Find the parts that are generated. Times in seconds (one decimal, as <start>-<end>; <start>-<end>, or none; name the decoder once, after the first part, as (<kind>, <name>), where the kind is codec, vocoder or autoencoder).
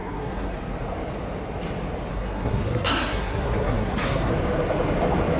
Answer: 0.0-0.5 (codec, SNAC); 2.1-4.3